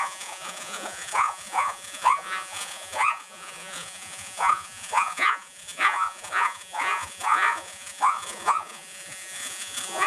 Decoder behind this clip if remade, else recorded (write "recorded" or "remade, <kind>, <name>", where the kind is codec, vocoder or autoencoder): remade, vocoder, Vocos